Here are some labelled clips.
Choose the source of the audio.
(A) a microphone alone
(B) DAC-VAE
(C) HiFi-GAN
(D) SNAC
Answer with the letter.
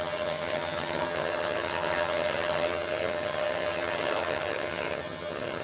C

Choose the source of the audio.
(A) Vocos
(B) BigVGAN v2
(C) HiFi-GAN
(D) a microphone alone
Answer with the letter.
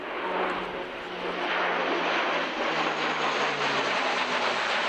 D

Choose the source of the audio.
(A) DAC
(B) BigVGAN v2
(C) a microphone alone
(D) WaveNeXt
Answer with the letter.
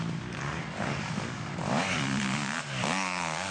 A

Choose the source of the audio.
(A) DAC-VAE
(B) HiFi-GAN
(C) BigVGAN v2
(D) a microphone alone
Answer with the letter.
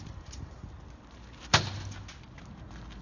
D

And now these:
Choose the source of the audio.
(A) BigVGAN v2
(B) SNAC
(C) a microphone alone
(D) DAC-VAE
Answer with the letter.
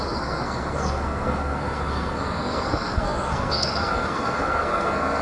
B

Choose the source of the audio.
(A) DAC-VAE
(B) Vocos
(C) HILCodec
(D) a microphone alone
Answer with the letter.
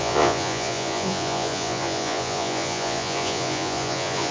B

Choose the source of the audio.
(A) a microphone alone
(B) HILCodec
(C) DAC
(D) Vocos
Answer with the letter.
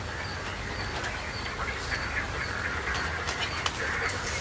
A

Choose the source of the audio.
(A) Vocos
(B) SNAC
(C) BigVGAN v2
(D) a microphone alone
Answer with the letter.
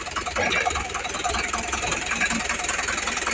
C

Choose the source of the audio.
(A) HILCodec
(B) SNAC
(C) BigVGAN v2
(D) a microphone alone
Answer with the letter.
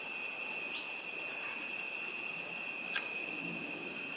C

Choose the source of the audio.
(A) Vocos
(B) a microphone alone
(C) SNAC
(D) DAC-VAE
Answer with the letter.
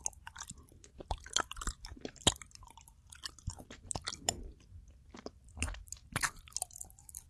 B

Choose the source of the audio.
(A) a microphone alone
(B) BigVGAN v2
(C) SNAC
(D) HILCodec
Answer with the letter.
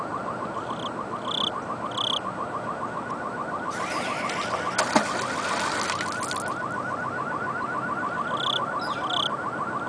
A